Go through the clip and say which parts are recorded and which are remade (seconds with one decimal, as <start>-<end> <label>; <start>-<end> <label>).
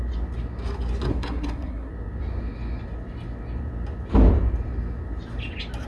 0.0-1.1 recorded; 1.1-1.9 remade; 1.9-5.9 recorded